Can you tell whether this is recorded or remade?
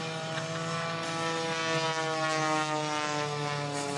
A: recorded